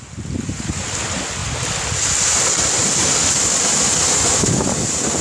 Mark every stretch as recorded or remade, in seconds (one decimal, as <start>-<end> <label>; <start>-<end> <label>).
0.0-5.2 recorded